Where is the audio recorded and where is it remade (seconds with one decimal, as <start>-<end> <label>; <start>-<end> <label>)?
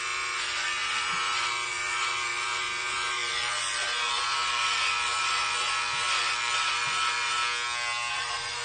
0.0-7.4 remade; 7.4-8.1 recorded; 8.1-8.6 remade